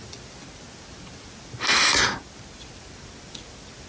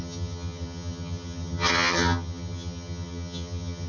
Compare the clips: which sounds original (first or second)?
first